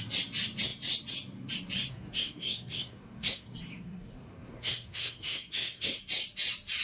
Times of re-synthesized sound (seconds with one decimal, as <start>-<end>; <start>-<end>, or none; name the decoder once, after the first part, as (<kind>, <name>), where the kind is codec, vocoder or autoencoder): 1.9-6.0 (codec, SNAC)